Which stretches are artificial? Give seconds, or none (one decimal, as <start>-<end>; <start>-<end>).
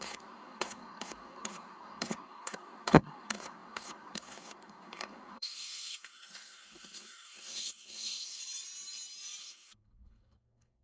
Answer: 0.0-8.4; 9.4-10.8